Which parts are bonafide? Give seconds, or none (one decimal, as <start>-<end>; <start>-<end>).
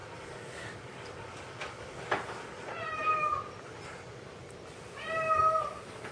2.0-6.1